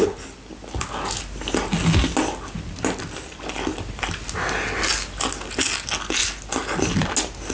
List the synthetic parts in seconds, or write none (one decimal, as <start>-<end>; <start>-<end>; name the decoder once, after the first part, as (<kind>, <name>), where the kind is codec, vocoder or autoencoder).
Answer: none